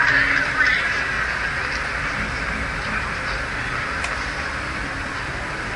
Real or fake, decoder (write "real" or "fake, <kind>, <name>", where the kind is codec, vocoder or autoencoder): real